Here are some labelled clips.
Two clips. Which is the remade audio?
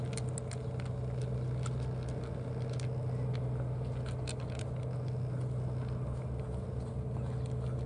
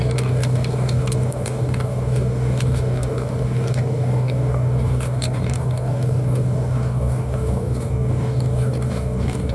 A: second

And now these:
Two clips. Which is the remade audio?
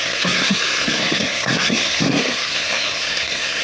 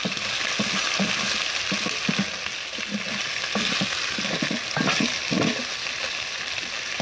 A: first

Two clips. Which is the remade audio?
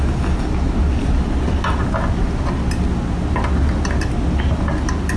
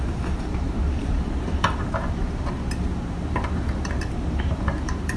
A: second